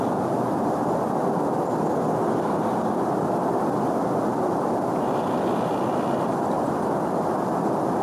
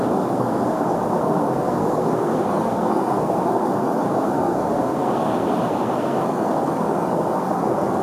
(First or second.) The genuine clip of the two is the first